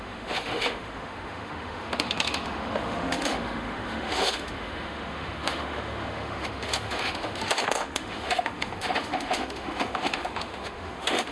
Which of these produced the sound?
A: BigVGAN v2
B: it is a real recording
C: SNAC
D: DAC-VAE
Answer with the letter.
D